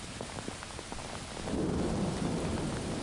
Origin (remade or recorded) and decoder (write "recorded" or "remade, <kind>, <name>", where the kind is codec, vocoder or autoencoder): recorded